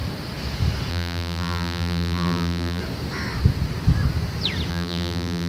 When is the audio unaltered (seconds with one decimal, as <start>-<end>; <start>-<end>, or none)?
0.0-0.9; 2.8-4.7

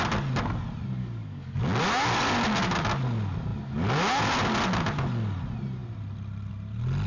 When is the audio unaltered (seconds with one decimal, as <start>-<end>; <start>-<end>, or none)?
0.0-1.0; 1.8-7.1